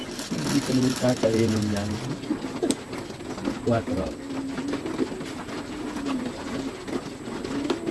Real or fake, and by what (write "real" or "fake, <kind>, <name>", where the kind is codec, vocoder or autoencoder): real